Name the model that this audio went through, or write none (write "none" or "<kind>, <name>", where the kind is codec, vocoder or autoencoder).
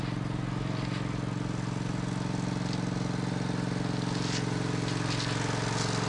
none